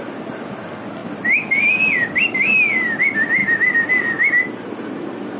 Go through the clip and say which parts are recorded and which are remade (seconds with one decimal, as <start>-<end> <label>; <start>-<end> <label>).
0.0-5.4 recorded